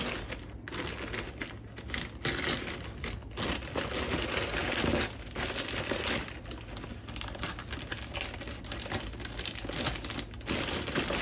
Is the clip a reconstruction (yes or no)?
no